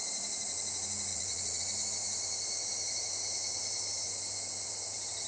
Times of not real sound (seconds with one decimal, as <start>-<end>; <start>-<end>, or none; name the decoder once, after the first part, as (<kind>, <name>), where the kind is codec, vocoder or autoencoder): 1.1-1.6 (vocoder, Vocos)